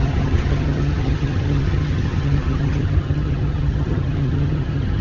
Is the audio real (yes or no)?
no